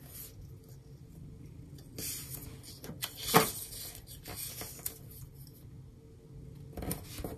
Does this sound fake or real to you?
real